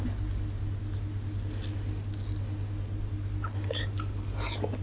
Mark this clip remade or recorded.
recorded